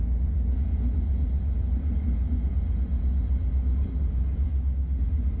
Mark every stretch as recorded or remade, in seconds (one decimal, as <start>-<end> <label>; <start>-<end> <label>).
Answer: 0.0-4.5 remade; 4.5-5.0 recorded; 5.0-5.4 remade

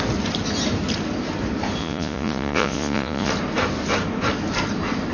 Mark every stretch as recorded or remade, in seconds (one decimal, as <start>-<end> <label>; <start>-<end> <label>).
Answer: 0.0-1.8 recorded; 1.8-3.3 remade; 3.3-5.1 recorded

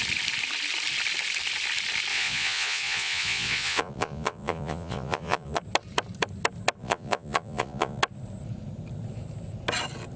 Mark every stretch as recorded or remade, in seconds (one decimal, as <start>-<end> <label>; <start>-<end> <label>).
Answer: 0.0-2.1 recorded; 2.1-5.6 remade; 5.6-6.8 recorded; 6.8-8.0 remade; 8.0-10.2 recorded

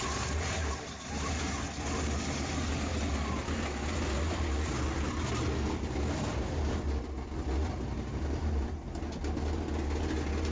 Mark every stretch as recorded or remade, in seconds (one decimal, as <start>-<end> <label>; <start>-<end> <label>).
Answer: 0.0-10.5 recorded

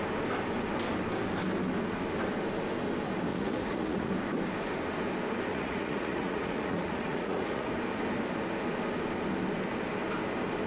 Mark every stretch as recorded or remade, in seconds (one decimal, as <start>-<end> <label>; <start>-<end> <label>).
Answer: 0.0-3.3 recorded; 3.3-4.1 remade; 4.1-5.5 recorded; 5.5-7.7 remade; 7.7-10.7 recorded

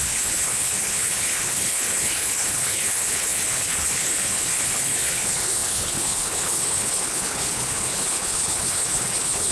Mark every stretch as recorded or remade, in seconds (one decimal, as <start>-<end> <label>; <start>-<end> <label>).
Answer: 0.0-9.5 remade

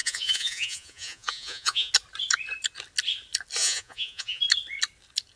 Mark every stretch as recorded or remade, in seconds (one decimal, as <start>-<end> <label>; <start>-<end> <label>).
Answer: 0.0-1.9 remade; 1.9-3.6 recorded; 3.6-4.4 remade; 4.4-5.4 recorded

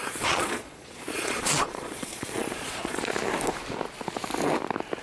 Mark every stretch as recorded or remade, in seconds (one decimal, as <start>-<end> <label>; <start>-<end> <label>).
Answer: 0.0-3.0 remade; 3.0-5.0 recorded